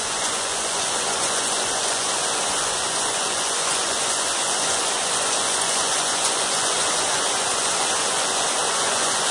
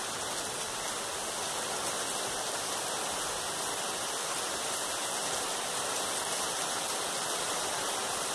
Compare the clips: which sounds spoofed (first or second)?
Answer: first